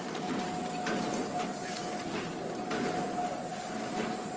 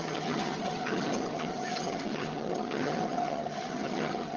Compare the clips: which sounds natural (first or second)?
first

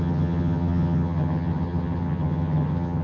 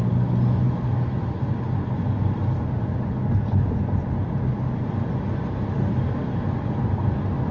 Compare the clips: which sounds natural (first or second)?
second